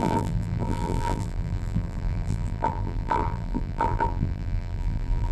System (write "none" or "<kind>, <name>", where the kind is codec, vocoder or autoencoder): vocoder, BigVGAN v2